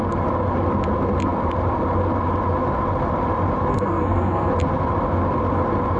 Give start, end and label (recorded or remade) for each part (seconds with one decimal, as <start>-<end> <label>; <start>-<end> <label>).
0.0-3.7 recorded; 3.7-4.5 remade; 4.5-6.0 recorded